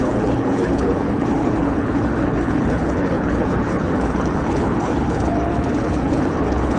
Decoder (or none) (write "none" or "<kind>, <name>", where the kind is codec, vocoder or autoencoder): codec, HILCodec